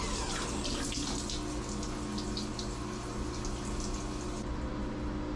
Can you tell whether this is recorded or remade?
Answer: recorded